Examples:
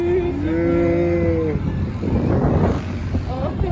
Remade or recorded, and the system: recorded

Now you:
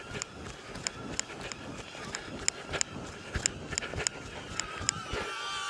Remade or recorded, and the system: recorded